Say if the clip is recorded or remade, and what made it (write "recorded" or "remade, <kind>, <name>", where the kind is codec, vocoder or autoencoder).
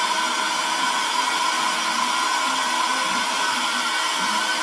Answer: recorded